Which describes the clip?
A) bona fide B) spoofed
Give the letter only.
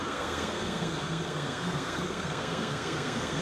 B